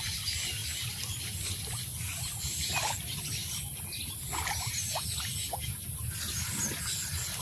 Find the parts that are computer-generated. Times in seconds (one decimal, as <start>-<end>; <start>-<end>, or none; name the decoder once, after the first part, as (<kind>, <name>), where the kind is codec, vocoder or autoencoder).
none